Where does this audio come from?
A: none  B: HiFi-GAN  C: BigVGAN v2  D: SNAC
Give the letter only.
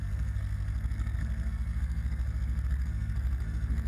D